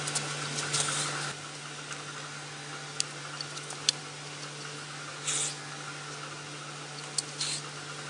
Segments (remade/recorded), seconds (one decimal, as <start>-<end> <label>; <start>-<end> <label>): 0.0-8.1 recorded